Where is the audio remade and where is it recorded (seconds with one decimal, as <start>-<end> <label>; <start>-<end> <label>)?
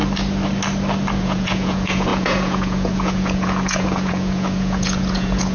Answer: 0.0-1.2 recorded; 1.2-5.5 remade